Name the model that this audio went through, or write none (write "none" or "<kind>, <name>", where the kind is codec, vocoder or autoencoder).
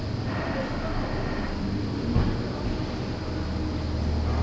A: none